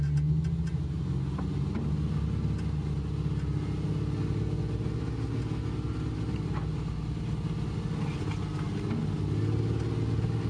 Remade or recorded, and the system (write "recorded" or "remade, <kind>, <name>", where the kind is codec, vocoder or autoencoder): recorded